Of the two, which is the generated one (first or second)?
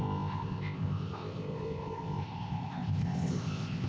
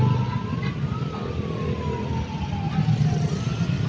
first